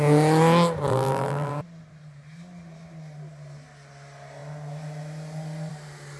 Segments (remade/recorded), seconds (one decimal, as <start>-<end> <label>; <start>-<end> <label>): 0.0-0.9 recorded; 0.9-1.5 remade; 1.5-6.2 recorded